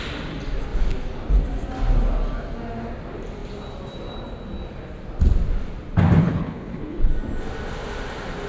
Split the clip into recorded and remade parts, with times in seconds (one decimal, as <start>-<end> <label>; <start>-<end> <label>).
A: 0.0-6.2 recorded; 6.2-7.1 remade; 7.1-8.5 recorded